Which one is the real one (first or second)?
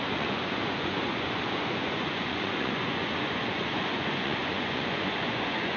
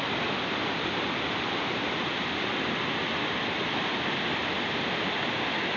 second